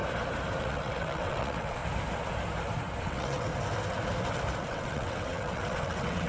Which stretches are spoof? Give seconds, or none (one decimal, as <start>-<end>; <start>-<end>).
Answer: 0.6-1.8; 3.0-3.5; 4.7-6.3